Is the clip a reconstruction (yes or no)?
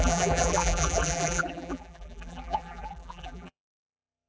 yes